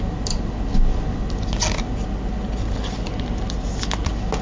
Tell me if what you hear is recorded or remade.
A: recorded